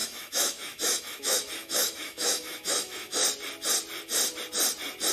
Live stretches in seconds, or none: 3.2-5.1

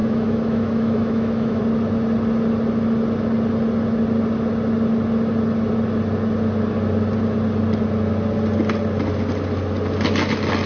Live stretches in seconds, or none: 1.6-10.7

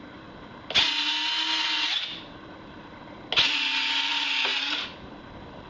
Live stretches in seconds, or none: 0.0-5.7

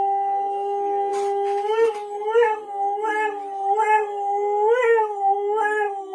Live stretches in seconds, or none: 0.0-6.1